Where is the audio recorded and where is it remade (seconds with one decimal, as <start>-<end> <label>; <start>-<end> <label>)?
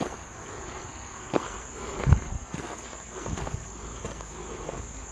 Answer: 0.0-5.1 remade